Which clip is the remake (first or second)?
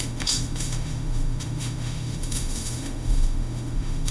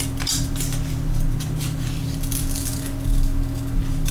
first